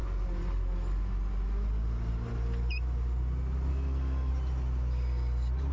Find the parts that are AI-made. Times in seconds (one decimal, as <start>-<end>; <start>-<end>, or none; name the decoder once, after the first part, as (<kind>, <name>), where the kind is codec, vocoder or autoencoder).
3.7-4.3 (codec, SNAC)